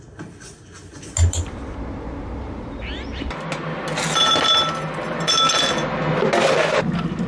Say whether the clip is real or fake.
real